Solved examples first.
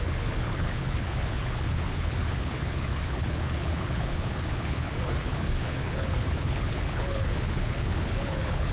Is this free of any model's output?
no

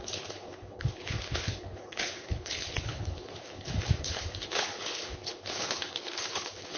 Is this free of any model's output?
no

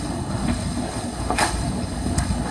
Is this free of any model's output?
no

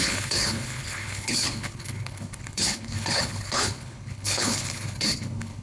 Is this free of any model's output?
no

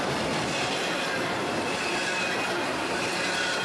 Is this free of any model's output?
yes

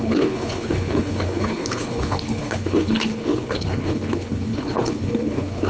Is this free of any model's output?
no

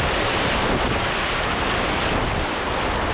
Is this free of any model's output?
yes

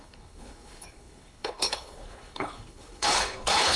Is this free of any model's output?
no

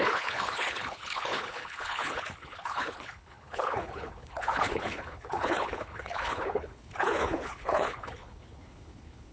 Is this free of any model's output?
no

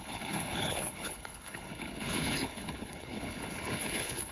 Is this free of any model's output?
no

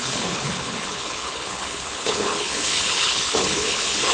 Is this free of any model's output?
no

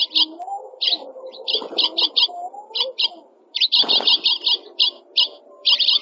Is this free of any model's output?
yes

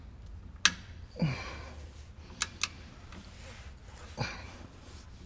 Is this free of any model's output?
yes